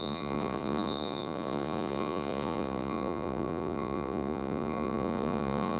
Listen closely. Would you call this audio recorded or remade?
remade